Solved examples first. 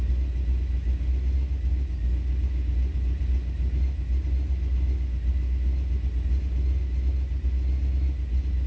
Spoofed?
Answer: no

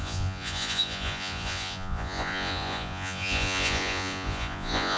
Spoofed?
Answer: yes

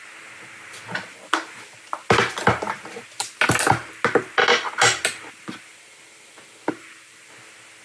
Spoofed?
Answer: no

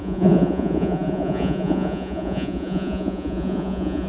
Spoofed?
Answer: yes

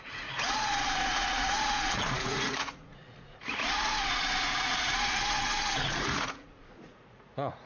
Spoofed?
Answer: yes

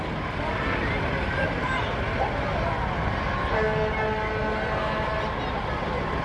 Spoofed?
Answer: no